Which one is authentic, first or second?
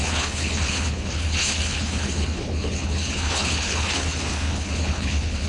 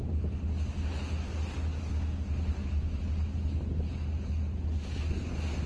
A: second